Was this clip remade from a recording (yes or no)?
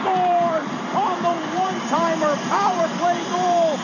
yes